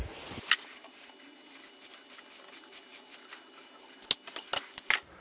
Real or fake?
real